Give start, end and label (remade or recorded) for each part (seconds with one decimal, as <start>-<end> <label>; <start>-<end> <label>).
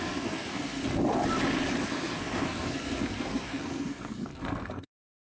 0.0-0.8 remade; 0.8-1.9 recorded; 1.9-5.3 remade